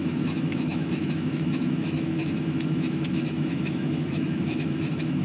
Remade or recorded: remade